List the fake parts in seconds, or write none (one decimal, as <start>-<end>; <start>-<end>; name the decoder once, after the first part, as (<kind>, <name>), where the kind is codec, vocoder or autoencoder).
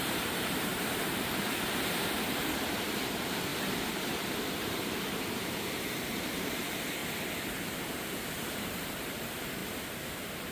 0.0-7.0 (vocoder, BigVGAN v2); 7.8-10.5